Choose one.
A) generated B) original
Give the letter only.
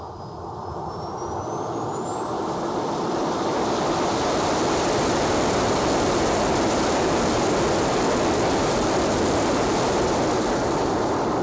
B